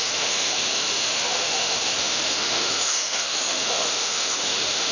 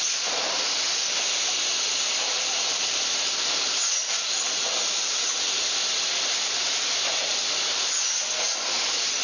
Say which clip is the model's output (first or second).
first